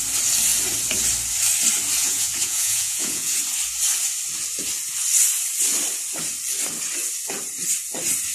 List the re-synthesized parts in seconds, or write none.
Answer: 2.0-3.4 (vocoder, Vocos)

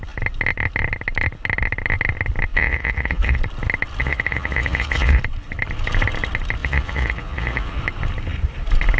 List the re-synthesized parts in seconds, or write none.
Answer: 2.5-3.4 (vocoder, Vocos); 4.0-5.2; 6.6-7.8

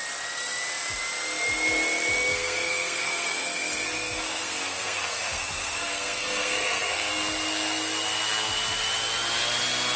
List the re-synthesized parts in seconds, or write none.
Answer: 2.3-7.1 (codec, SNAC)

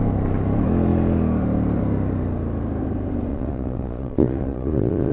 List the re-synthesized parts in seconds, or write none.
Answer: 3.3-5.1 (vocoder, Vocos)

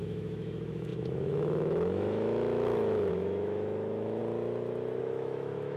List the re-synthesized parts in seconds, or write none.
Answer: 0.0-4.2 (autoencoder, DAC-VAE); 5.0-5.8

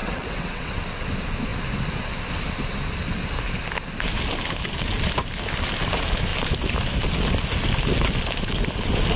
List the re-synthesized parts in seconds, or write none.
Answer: 0.0-0.8 (vocoder, WaveNeXt)